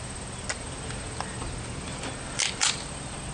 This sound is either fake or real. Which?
real